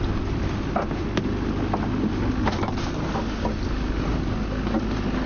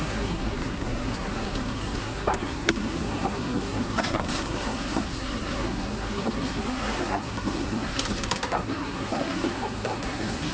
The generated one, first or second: second